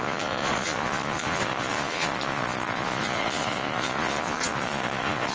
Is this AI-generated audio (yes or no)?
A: yes